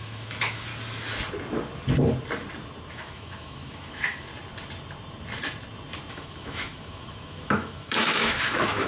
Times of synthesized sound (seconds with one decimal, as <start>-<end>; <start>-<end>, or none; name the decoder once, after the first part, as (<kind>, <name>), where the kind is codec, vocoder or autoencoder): 0.0-0.7 (autoencoder, DAC-VAE); 2.9-4.3; 6.1-8.9